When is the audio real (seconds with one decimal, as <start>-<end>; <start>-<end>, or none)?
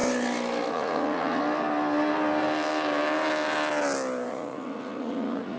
0.0-0.7; 1.4-4.3